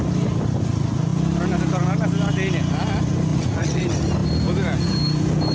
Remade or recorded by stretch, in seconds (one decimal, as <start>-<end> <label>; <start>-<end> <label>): 0.0-3.3 recorded; 3.3-3.8 remade; 3.8-5.5 recorded